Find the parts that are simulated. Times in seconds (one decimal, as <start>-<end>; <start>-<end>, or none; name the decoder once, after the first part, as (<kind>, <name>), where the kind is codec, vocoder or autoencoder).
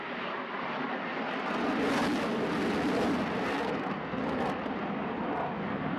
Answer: 3.5-4.2 (codec, SNAC)